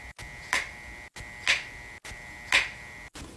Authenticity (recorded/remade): recorded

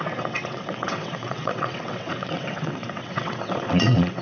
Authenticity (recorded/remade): remade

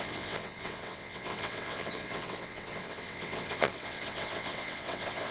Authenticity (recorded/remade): remade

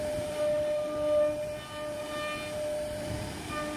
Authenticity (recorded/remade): recorded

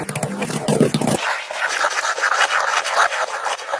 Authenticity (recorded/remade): recorded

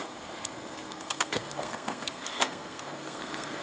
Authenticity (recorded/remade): remade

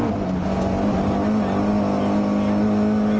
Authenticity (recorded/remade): recorded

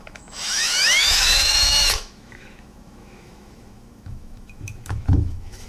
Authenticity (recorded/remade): remade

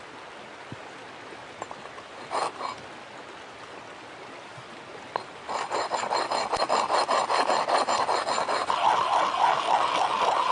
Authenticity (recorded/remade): recorded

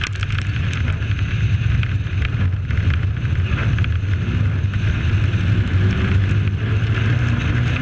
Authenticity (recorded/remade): recorded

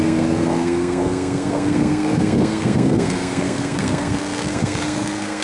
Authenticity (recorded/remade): remade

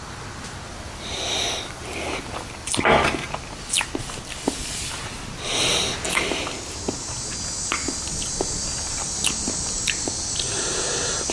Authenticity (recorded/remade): recorded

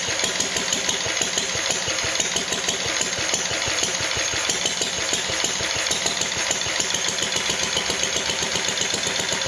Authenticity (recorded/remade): recorded